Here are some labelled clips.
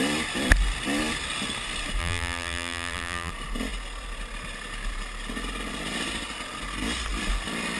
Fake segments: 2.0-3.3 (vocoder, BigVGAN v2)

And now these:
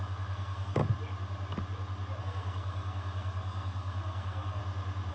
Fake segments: 0.0-0.8 (codec, SNAC); 2.2-4.6

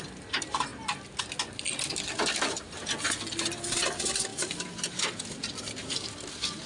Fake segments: 4.3-6.3 (vocoder, BigVGAN v2)

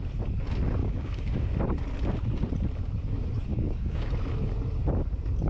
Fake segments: 0.8-1.3 (codec, DAC); 3.5-4.1